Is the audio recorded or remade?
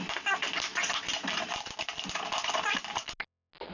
recorded